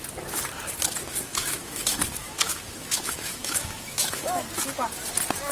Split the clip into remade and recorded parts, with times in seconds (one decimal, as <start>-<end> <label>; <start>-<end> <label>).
0.0-1.1 recorded; 1.1-4.4 remade; 4.4-5.5 recorded